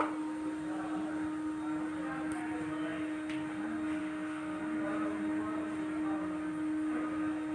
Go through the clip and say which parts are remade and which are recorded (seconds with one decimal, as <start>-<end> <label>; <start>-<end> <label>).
0.0-4.0 recorded; 4.0-4.6 remade; 4.6-7.5 recorded